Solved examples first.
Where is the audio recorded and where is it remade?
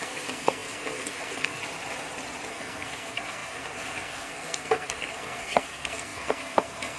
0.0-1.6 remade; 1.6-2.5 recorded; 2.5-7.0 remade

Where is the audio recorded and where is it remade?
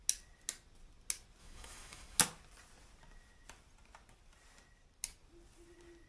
0.0-1.4 recorded; 1.4-2.2 remade; 2.2-6.1 recorded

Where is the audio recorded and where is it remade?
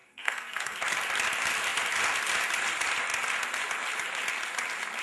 0.0-0.8 remade; 0.8-5.0 recorded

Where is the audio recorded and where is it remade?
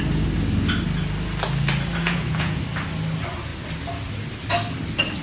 0.0-2.0 recorded; 2.0-2.6 remade; 2.6-5.2 recorded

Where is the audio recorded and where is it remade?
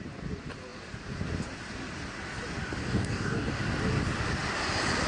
0.0-2.8 recorded; 2.8-3.6 remade; 3.6-5.1 recorded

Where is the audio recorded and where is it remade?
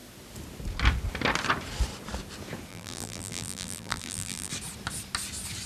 0.0-2.7 recorded; 2.7-4.5 remade; 4.5-5.7 recorded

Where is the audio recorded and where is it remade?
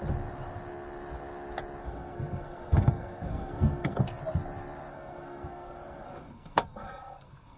0.0-1.8 recorded; 1.8-4.0 remade; 4.0-4.9 recorded; 4.9-7.6 remade